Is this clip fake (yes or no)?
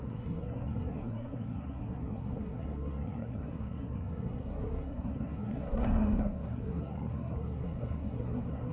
yes